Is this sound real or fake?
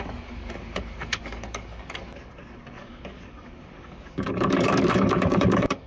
fake